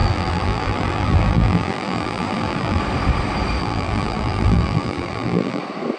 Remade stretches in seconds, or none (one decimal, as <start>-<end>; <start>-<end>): 0.0-2.8; 3.6-5.6